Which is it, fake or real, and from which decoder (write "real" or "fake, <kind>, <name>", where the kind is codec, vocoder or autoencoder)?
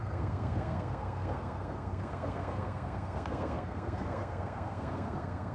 fake, codec, SNAC